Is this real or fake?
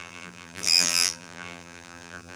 fake